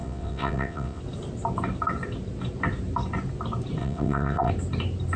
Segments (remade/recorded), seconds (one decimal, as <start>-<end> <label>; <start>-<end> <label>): 0.0-1.0 remade; 1.0-3.8 recorded; 3.8-4.5 remade; 4.5-5.2 recorded